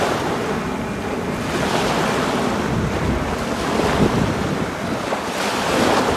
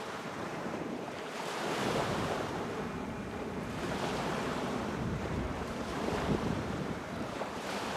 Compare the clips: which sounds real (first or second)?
first